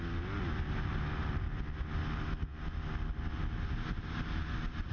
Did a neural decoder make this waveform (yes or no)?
no